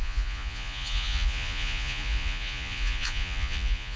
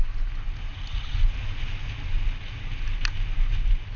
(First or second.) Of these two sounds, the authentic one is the second